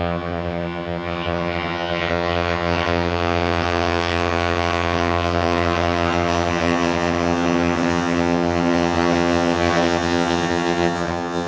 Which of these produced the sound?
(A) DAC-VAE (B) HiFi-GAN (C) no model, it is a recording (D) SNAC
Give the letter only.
B